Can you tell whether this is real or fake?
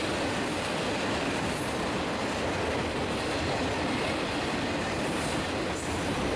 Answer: fake